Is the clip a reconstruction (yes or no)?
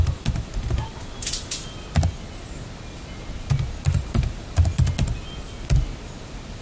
no